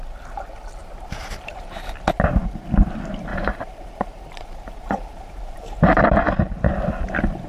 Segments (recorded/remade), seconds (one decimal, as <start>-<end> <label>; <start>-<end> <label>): 0.0-0.8 recorded; 0.8-2.0 remade; 2.0-3.3 recorded; 3.3-5.9 remade; 5.9-7.5 recorded